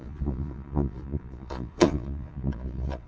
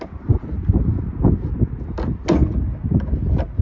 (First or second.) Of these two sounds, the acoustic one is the second